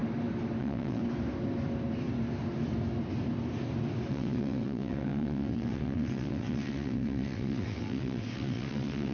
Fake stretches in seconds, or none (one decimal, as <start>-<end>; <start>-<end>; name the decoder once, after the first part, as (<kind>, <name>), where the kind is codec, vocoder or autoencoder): 0.6-1.0 (vocoder, WaveNeXt); 4.1-9.1